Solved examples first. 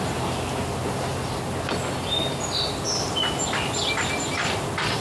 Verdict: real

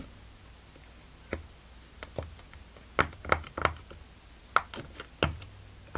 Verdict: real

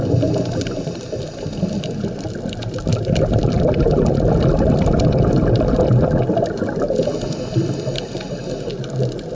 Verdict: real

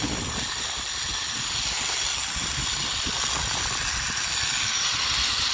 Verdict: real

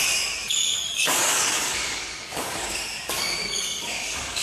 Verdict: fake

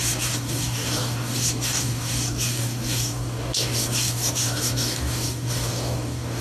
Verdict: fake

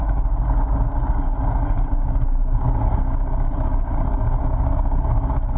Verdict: fake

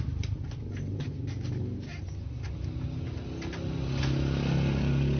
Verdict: real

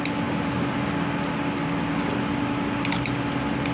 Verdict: real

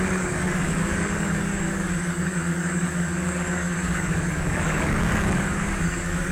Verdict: fake